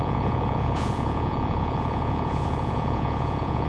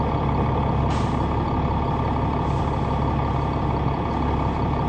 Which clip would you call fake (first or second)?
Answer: first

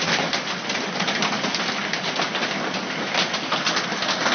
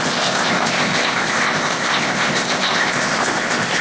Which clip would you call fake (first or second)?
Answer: second